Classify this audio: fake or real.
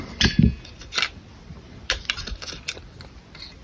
real